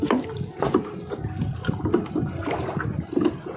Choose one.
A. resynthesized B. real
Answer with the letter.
B